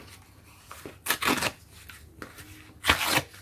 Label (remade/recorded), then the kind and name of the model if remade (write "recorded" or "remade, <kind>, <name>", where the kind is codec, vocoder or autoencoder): recorded